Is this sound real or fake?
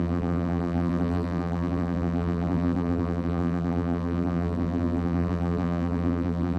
fake